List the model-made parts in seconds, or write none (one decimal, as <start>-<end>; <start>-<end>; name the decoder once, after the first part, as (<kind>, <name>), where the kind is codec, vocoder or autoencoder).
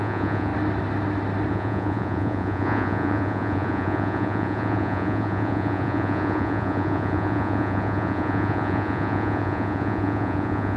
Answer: 0.0-0.5 (vocoder, Vocos); 1.5-10.8